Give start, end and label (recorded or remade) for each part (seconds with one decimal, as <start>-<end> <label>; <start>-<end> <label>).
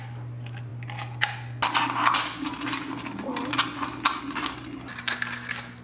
0.0-5.8 recorded